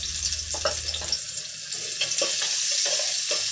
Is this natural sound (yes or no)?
yes